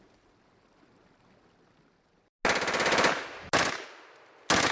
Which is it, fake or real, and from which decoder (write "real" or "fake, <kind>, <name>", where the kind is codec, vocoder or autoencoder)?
real